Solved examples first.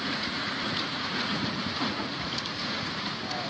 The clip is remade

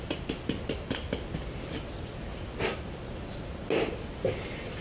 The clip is recorded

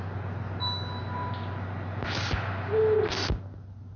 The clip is recorded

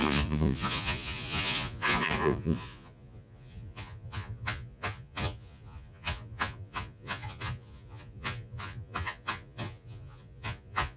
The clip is remade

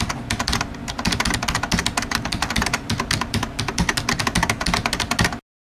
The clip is recorded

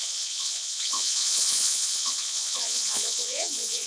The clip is remade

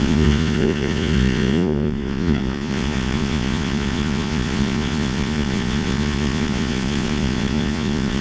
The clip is remade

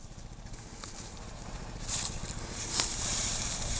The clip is remade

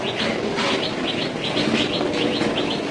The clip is recorded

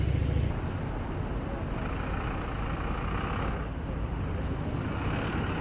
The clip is recorded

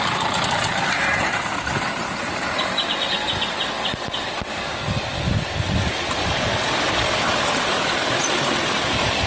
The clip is recorded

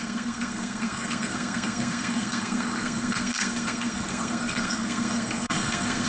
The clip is remade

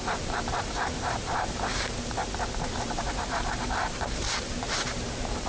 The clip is remade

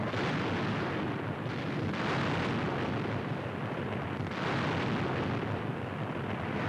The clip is recorded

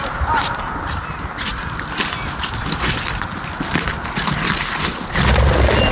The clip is recorded